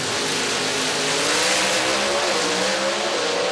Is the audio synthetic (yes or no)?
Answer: no